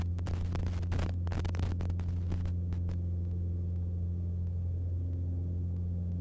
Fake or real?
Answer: real